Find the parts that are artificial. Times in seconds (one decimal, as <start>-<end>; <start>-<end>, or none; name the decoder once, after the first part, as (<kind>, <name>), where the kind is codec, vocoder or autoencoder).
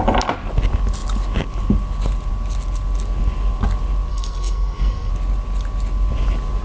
4.1-5.1 (codec, SNAC)